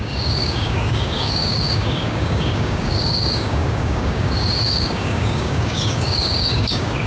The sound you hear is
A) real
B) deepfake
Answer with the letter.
B